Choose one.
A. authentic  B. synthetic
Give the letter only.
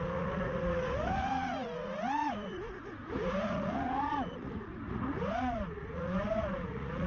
B